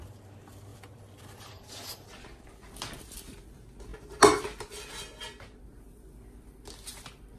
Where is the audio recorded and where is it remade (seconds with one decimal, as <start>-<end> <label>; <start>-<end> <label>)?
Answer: 0.0-0.7 recorded; 0.7-1.3 remade; 1.3-7.4 recorded